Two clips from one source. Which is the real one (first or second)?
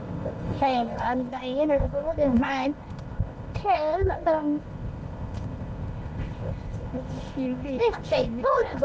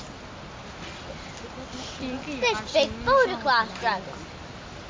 second